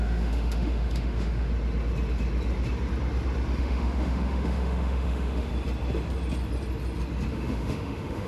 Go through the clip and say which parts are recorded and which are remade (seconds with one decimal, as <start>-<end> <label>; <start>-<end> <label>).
0.0-1.5 remade; 1.5-3.6 recorded; 3.6-5.5 remade; 5.5-7.3 recorded; 7.3-8.3 remade